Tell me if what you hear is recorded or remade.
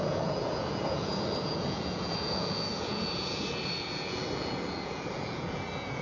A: remade